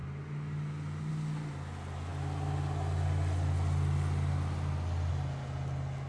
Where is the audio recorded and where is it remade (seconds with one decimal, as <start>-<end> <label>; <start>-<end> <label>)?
0.0-6.1 recorded

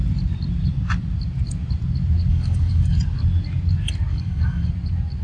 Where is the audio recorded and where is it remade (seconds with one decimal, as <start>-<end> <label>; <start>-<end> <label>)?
0.0-2.3 recorded; 2.3-3.0 remade; 3.0-4.1 recorded; 4.1-4.7 remade; 4.7-5.2 recorded

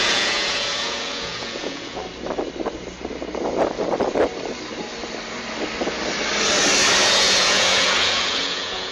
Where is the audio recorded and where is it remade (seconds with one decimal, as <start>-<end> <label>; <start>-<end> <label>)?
0.0-2.0 remade; 2.0-7.0 recorded; 7.0-8.9 remade

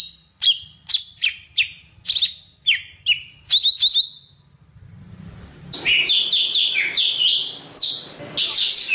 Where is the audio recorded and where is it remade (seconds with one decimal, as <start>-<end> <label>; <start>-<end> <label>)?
0.0-8.9 recorded

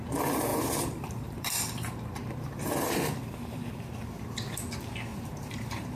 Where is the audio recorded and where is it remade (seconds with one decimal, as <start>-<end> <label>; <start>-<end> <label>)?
0.0-0.5 recorded; 0.5-3.7 remade; 3.7-5.1 recorded; 5.1-6.0 remade